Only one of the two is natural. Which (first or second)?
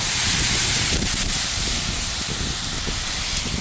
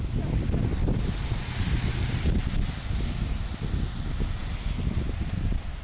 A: second